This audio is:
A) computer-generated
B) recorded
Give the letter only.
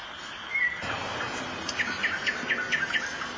B